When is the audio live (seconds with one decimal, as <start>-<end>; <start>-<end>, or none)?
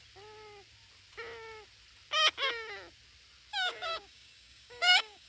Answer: 0.0-3.5